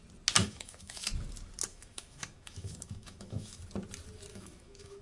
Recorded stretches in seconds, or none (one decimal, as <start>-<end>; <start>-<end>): 0.0-0.4; 1.1-1.7; 3.6-4.3